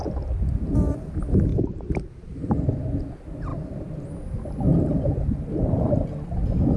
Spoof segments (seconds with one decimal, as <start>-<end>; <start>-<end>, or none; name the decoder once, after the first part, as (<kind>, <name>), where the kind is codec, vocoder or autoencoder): 1.5-2.1 (vocoder, BigVGAN v2); 4.7-5.3